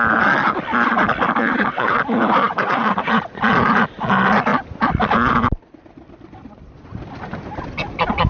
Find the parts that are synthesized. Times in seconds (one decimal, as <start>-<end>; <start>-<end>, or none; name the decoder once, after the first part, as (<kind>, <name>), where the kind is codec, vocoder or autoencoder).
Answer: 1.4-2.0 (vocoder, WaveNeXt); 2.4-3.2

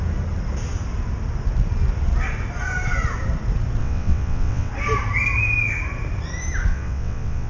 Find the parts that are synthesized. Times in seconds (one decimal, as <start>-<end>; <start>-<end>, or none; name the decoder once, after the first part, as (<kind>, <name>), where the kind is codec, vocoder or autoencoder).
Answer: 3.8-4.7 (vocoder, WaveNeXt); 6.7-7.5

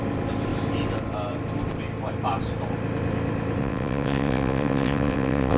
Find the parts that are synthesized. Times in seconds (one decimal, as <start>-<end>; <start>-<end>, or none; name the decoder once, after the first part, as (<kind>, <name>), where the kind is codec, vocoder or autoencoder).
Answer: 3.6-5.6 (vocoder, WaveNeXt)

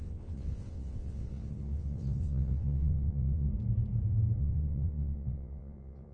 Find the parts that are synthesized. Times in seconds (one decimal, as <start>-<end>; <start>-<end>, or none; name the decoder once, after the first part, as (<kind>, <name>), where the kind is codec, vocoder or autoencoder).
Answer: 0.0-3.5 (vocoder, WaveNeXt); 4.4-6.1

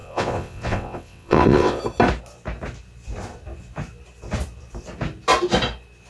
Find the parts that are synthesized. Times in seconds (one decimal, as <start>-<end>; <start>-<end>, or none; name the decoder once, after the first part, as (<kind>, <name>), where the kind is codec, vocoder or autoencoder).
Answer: 0.0-1.8 (vocoder, WaveNeXt)

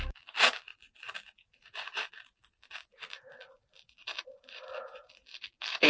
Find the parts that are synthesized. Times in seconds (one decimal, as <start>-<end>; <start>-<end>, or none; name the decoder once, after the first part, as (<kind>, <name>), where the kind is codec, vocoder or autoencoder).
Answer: none

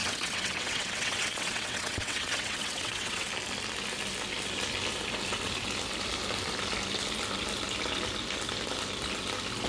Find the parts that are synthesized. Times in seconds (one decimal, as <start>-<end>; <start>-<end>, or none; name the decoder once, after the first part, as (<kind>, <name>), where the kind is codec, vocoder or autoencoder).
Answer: 0.0-3.3 (vocoder, WaveNeXt)